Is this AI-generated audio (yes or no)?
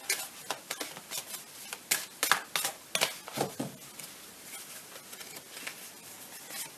no